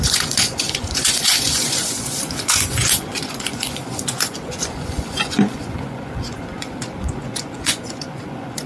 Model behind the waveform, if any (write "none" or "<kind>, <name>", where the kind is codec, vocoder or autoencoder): vocoder, Vocos